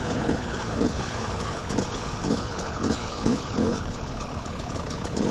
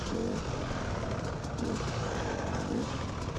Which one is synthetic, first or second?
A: first